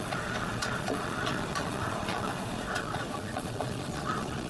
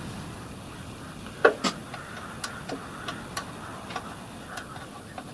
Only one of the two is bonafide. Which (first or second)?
second